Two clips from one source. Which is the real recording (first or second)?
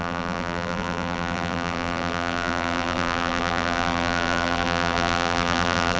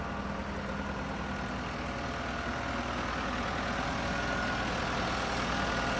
second